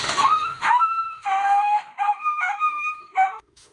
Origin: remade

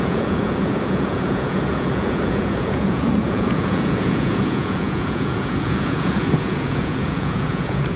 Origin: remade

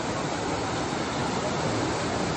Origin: recorded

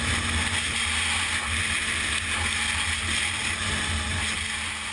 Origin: recorded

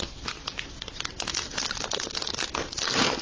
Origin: recorded